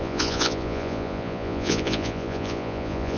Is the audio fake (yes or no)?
yes